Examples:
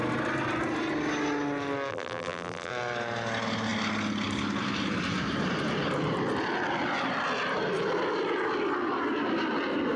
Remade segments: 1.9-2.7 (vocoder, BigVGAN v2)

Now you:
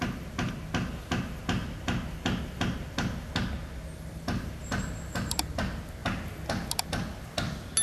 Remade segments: none

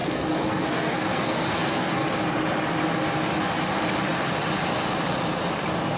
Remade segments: 0.0-2.1 (codec, SNAC)

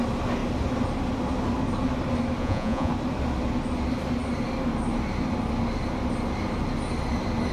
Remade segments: 2.4-2.9 (vocoder, Vocos)